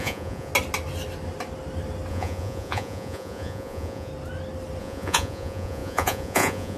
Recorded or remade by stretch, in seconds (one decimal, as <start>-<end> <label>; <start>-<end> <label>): 0.0-0.5 remade; 0.5-2.1 recorded; 2.1-4.1 remade; 4.1-4.8 recorded; 4.8-6.8 remade